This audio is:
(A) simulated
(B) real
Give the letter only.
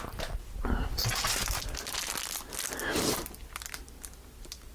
B